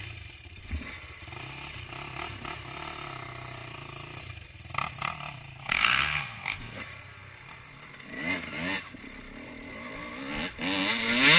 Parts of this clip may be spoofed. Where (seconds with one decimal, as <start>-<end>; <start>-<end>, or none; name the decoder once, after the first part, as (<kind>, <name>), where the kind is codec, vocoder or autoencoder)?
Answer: 5.6-6.8 (codec, SNAC)